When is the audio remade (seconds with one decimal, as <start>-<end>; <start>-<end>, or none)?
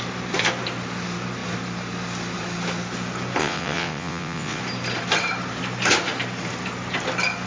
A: 3.4-4.6